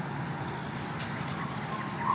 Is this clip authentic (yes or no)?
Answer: yes